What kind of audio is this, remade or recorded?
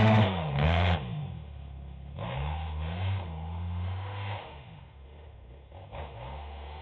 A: remade